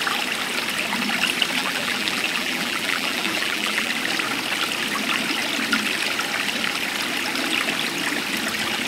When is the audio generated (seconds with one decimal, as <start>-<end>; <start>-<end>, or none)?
1.6-3.9